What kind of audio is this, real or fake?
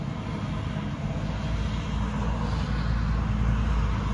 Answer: real